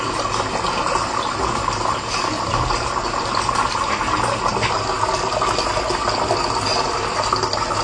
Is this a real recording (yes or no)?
yes